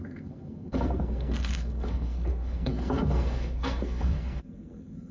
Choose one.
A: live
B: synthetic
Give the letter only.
B